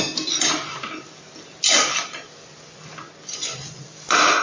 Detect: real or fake real